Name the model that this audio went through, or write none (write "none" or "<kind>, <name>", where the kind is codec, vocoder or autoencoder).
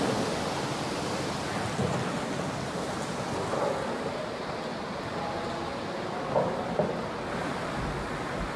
none